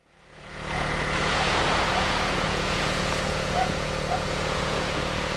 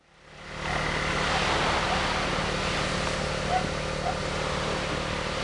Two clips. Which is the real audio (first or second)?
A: second